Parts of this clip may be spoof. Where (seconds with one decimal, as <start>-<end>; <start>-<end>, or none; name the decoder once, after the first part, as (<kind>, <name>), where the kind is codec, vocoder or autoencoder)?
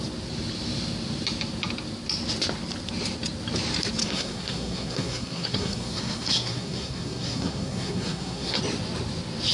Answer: 4.0-8.6 (codec, SNAC)